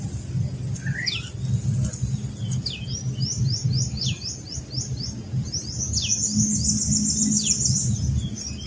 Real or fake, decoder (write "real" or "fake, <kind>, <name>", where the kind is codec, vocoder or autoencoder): real